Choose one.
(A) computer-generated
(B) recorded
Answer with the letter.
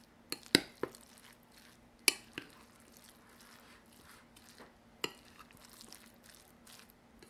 B